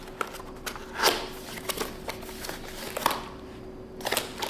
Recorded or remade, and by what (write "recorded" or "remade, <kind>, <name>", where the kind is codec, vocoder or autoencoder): recorded